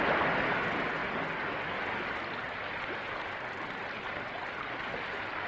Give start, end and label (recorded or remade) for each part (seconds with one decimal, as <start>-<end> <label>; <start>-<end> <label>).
0.0-5.5 recorded